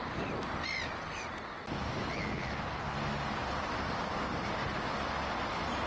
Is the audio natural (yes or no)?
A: yes